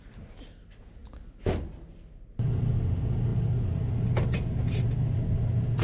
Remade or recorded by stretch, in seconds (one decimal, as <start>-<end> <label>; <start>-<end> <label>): 0.0-5.8 recorded